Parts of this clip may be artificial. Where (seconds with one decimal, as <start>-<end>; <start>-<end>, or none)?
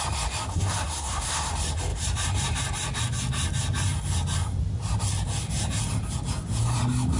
0.5-1.5